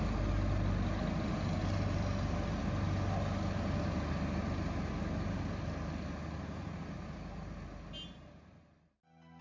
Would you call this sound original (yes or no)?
yes